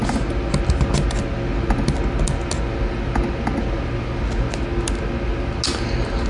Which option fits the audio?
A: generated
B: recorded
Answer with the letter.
B